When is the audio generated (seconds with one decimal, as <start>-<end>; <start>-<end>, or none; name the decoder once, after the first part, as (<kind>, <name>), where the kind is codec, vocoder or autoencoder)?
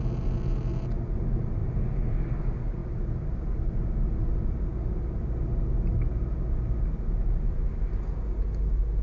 none